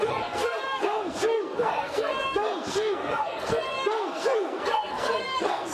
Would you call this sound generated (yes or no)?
yes